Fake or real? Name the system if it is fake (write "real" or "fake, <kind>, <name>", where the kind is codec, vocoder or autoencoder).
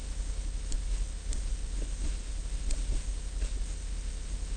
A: fake, codec, HILCodec